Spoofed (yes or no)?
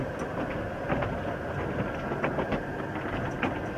no